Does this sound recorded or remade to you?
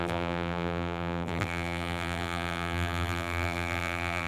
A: remade